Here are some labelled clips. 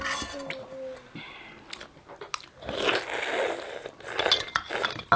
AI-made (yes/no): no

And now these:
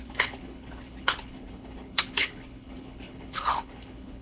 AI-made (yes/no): yes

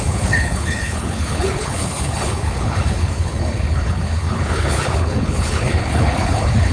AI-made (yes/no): yes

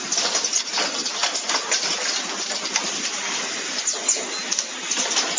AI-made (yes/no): no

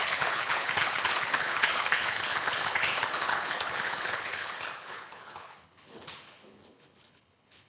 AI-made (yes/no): yes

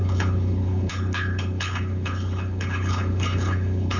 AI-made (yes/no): yes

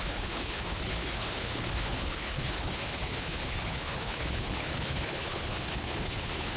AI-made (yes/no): yes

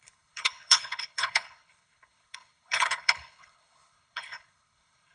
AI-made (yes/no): yes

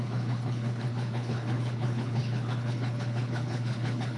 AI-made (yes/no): yes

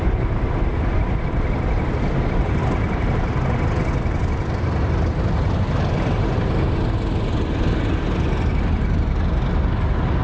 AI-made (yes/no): no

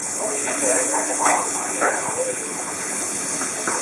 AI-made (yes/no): yes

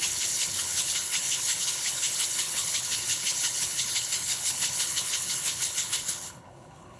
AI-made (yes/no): yes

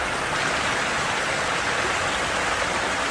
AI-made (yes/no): no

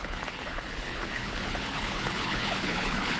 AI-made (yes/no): yes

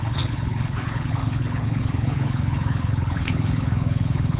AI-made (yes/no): yes